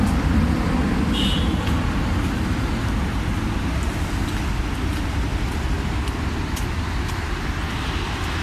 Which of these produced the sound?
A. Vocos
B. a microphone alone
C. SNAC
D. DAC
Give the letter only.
B